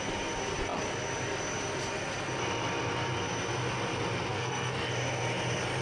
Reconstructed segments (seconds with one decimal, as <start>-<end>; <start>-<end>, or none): 4.3-4.9